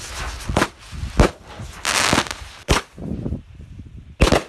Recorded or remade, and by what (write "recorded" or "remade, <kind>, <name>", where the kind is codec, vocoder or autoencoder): recorded